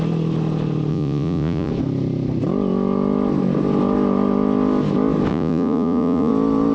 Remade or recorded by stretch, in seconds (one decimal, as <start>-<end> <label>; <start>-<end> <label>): 0.0-0.9 recorded; 0.9-1.7 remade; 1.7-5.3 recorded; 5.3-6.3 remade; 6.3-6.7 recorded